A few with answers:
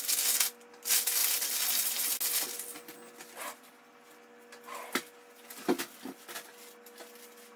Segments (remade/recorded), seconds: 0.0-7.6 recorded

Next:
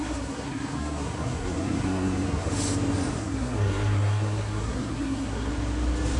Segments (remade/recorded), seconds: 0.0-2.5 remade; 2.5-3.2 recorded; 3.2-5.5 remade; 5.5-6.2 recorded

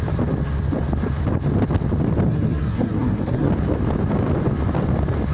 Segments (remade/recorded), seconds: 0.0-2.3 recorded; 2.3-3.5 remade; 3.5-5.3 recorded

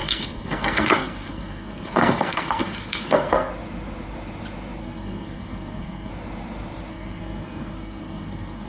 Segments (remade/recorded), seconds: 0.0-3.5 remade; 3.5-4.8 recorded; 4.8-6.1 remade; 6.1-6.9 recorded; 6.9-8.7 remade